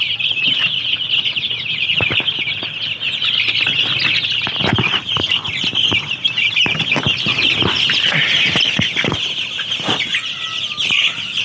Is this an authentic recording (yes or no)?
yes